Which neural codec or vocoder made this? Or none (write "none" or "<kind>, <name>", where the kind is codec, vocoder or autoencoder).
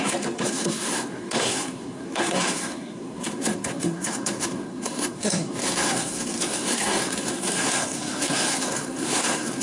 codec, SNAC